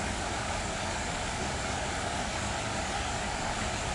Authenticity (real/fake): fake